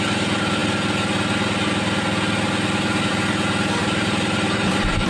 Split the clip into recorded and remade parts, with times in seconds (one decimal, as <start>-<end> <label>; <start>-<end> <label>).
0.0-3.8 recorded; 3.8-5.1 remade